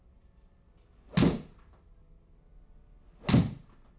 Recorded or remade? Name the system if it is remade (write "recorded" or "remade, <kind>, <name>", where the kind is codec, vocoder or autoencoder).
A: recorded